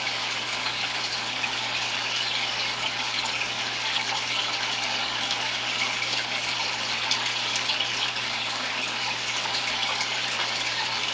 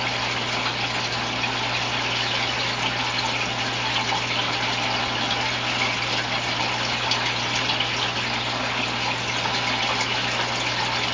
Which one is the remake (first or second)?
first